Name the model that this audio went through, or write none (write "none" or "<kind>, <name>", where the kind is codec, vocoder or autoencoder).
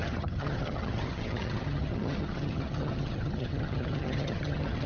vocoder, HiFi-GAN